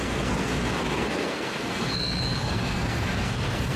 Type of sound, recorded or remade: remade